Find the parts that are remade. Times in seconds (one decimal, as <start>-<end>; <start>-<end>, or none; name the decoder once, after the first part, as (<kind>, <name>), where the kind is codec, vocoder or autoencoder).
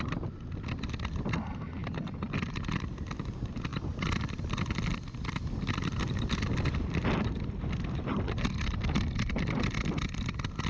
3.7-7.3 (vocoder, BigVGAN v2)